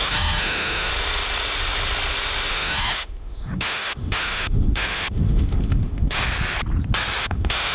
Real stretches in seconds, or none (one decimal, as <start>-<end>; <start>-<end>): 0.9-2.5; 6.2-7.2